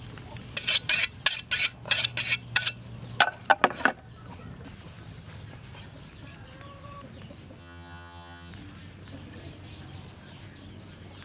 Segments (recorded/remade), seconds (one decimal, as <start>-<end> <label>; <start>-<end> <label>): 0.0-7.6 recorded; 7.6-8.5 remade; 8.5-11.2 recorded